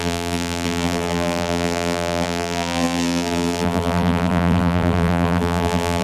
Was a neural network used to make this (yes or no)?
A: yes